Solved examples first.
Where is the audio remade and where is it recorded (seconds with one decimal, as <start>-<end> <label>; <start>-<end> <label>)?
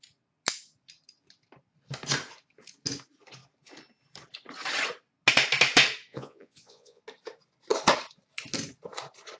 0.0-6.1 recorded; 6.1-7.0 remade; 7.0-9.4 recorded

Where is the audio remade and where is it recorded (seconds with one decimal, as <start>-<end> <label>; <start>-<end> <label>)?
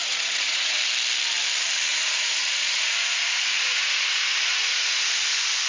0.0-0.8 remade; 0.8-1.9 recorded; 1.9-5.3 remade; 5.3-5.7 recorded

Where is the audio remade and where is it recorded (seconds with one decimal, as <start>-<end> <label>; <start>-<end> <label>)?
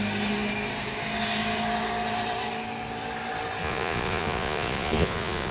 0.0-3.6 recorded; 3.6-5.5 remade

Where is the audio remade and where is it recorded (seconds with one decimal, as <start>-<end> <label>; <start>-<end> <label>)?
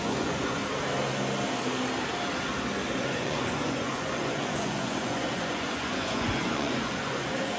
0.0-0.6 remade; 0.6-3.0 recorded; 3.0-7.6 remade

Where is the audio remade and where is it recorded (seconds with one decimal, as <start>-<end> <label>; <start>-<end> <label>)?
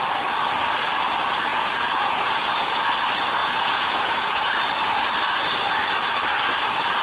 0.0-1.5 recorded; 1.5-2.8 remade; 2.8-3.4 recorded; 3.4-4.6 remade; 4.6-7.0 recorded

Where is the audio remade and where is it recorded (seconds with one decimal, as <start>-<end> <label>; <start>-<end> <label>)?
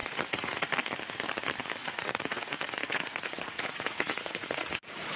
0.0-0.7 remade; 0.7-1.8 recorded; 1.8-5.2 remade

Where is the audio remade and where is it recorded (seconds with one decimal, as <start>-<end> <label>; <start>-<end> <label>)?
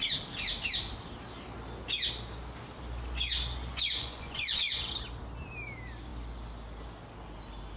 0.0-3.7 recorded; 3.7-4.9 remade; 4.9-7.8 recorded